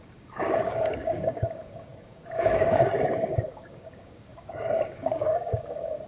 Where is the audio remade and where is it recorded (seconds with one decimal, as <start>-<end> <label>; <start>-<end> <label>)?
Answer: 0.0-6.1 remade